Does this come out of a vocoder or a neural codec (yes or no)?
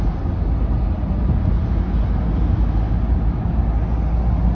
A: no